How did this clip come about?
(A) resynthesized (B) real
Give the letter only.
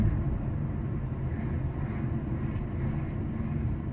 B